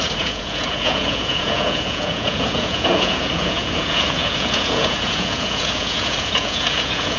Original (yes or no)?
no